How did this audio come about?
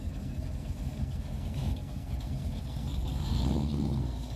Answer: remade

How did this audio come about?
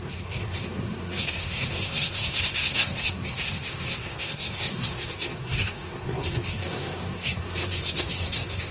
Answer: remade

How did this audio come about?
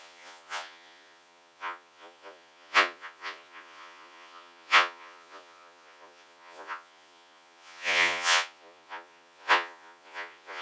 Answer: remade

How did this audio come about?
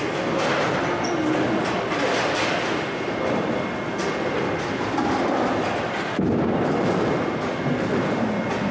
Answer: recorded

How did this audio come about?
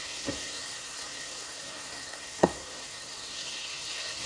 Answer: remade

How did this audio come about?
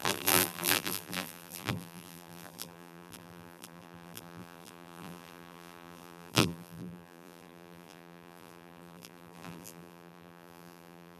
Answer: remade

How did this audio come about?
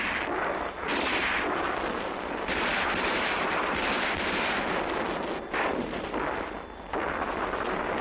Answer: remade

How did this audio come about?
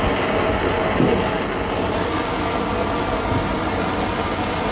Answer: recorded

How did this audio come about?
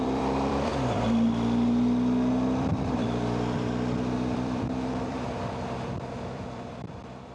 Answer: remade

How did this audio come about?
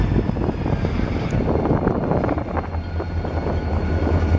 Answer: recorded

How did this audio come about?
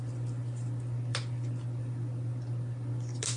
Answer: recorded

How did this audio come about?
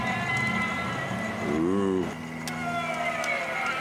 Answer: recorded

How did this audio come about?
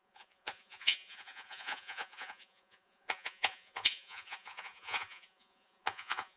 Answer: remade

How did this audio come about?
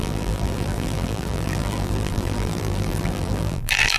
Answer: remade